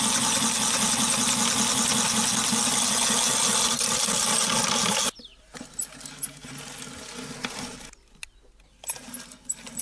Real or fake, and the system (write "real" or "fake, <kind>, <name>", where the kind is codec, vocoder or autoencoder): real